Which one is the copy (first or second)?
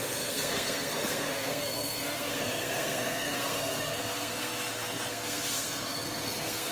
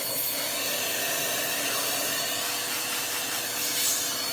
first